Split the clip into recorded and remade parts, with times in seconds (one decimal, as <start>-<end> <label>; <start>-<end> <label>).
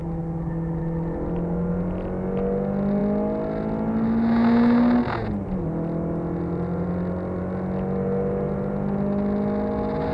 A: 0.0-10.1 recorded